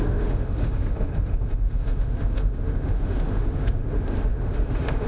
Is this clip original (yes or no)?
no